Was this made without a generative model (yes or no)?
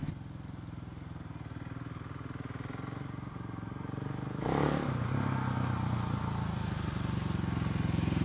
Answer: yes